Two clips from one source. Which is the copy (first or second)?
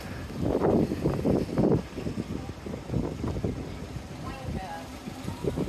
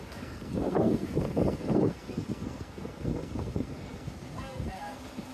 second